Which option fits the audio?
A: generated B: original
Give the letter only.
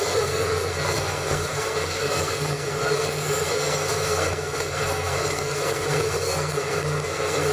A